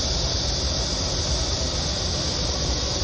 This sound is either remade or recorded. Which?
recorded